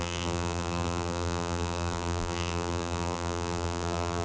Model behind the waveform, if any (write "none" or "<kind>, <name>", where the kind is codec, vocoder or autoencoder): vocoder, BigVGAN v2